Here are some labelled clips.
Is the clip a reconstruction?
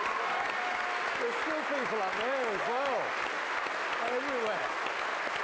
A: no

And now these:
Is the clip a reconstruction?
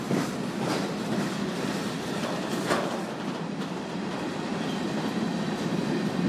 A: no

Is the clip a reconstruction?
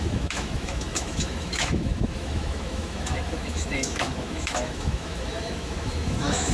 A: yes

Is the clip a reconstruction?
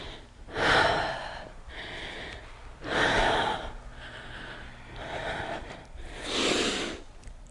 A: no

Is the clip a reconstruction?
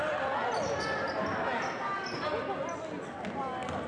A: no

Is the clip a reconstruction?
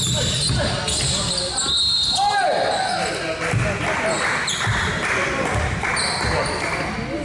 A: no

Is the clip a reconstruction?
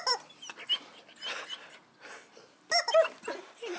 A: no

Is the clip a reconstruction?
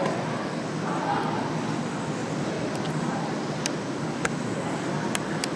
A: no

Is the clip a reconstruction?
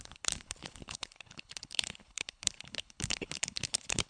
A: yes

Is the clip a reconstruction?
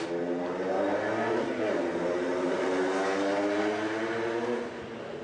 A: no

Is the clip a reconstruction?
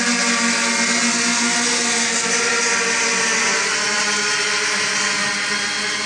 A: no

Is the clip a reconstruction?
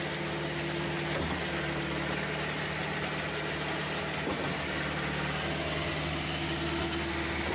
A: no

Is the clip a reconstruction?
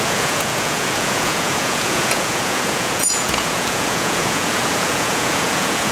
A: yes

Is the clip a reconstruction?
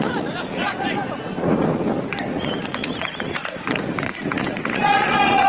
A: yes